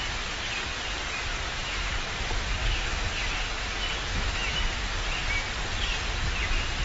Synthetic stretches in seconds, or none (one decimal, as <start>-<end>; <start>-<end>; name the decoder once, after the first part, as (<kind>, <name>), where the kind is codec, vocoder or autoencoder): 1.3-1.9 (autoencoder, DAC-VAE); 2.6-3.1; 4.1-4.6